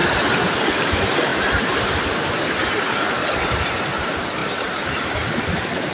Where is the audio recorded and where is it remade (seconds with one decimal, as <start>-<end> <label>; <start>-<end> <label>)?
0.0-0.7 recorded; 0.7-5.9 remade